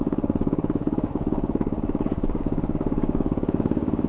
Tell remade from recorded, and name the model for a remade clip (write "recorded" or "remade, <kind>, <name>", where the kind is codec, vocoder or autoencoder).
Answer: remade, codec, DAC